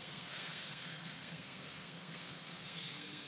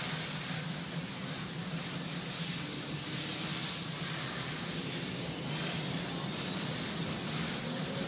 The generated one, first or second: first